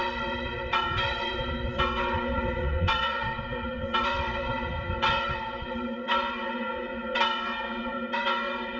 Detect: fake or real fake